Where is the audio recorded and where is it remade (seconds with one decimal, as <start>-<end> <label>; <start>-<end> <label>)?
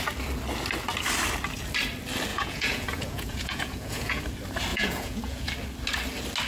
0.0-2.3 recorded; 2.3-4.2 remade; 4.2-4.7 recorded; 4.7-5.5 remade; 5.5-6.5 recorded